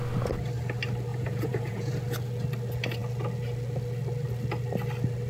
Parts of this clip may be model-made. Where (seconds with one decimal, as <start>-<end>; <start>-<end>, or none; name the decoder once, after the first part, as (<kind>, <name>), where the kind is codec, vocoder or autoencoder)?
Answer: 1.1-1.9 (vocoder, Vocos)